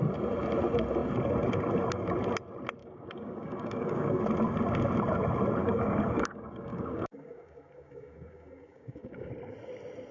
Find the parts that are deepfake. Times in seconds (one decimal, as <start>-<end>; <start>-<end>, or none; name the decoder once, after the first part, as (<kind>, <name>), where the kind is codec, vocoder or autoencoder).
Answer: 2.8-4.2 (codec, DAC); 5.6-9.3

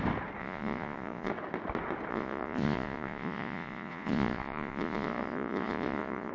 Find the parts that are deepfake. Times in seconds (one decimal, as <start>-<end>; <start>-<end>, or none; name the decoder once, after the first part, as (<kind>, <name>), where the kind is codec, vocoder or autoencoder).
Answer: 0.4-1.3 (vocoder, Vocos); 2.1-6.3

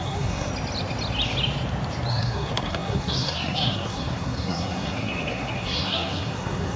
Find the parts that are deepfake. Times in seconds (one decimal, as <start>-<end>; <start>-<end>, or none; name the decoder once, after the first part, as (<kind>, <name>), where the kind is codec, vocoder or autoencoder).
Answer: 0.0-0.5 (codec, SNAC); 2.1-6.8

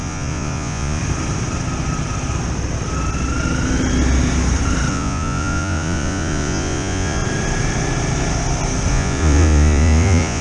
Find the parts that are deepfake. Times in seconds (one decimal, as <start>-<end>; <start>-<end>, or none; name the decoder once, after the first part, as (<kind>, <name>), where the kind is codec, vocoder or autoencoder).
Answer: 0.0-1.0 (vocoder, Vocos); 4.9-7.2; 8.9-10.4

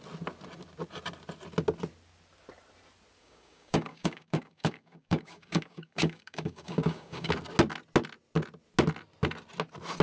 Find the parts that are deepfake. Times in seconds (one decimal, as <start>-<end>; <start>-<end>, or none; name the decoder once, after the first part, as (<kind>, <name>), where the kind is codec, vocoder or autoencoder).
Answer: 3.2-7.3 (codec, DAC)

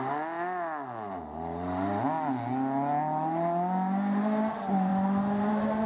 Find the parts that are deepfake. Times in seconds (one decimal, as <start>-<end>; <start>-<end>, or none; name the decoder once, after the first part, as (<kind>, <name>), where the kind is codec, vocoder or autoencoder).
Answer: none

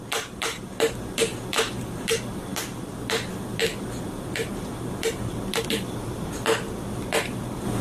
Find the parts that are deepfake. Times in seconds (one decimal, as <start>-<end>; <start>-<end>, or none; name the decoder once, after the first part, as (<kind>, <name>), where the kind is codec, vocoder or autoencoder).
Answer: 0.0-7.8 (vocoder, BigVGAN v2)

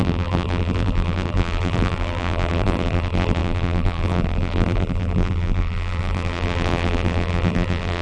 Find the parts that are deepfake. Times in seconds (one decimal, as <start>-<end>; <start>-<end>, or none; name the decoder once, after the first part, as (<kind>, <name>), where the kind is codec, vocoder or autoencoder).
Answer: 0.0-8.0 (vocoder, BigVGAN v2)